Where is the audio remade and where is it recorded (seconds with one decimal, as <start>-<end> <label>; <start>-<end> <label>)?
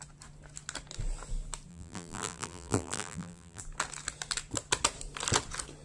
0.0-1.7 recorded; 1.7-3.6 remade; 3.6-5.8 recorded